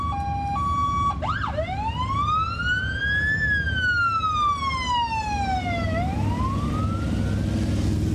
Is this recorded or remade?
recorded